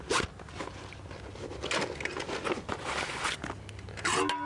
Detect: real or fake real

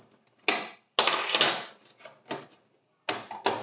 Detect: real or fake real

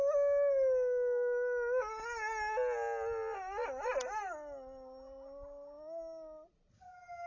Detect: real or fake real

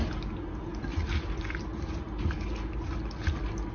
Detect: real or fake real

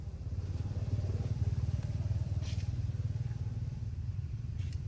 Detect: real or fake fake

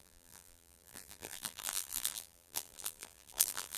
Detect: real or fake fake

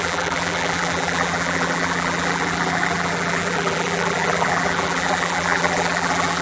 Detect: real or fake fake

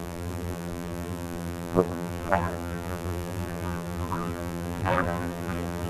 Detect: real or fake fake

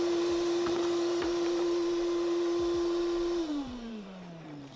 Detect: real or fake fake